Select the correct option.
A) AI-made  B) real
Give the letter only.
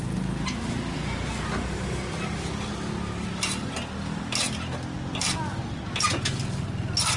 B